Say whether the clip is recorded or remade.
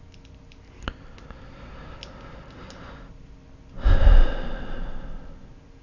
recorded